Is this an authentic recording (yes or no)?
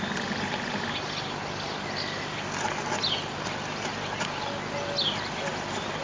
yes